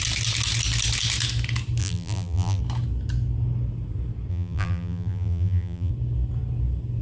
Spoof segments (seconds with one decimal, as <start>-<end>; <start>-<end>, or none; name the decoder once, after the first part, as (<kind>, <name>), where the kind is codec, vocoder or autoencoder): 1.8-2.6 (vocoder, BigVGAN v2); 4.3-5.9